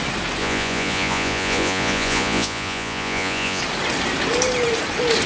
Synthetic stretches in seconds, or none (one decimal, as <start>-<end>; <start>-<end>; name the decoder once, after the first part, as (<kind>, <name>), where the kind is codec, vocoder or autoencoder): 0.4-3.6 (vocoder, Vocos)